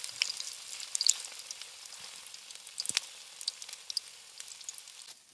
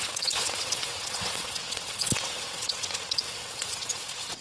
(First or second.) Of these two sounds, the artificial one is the second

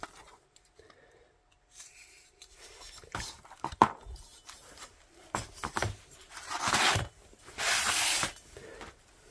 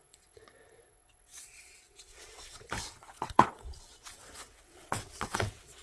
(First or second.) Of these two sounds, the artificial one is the second